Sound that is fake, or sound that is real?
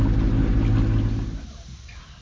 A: real